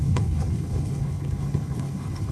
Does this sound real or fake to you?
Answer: fake